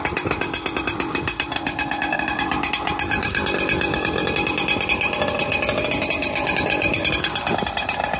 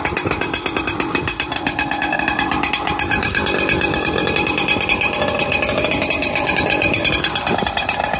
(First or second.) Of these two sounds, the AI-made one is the second